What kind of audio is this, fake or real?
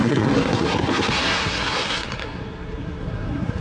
fake